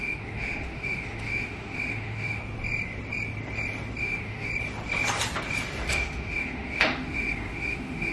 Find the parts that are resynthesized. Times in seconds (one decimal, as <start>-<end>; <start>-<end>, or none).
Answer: 0.0-2.4; 4.0-4.5; 5.9-8.1